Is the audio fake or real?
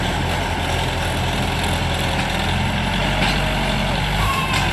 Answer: real